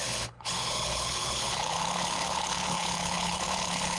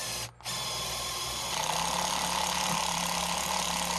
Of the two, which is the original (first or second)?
second